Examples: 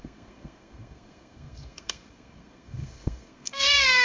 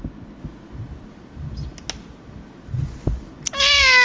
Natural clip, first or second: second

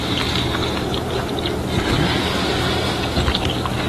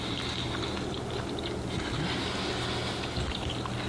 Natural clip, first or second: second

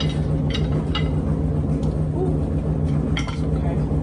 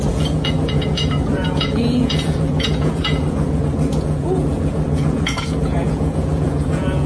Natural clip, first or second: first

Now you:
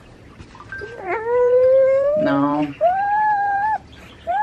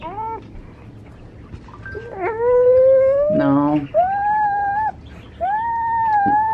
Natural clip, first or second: second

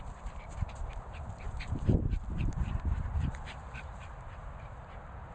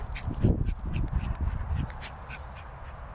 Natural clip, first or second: second